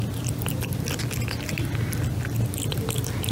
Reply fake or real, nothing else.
real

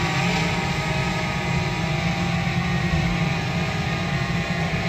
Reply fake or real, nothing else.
real